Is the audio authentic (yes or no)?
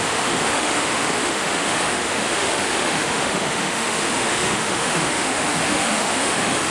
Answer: no